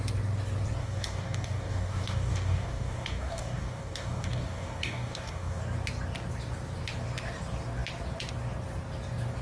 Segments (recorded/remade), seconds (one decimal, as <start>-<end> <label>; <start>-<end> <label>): 0.0-0.8 recorded; 0.8-5.6 remade; 5.6-9.4 recorded